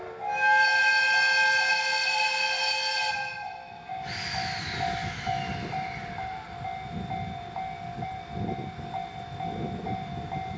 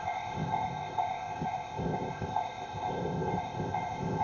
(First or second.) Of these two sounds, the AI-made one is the second